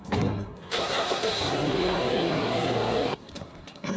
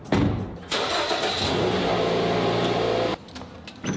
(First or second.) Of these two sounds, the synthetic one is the first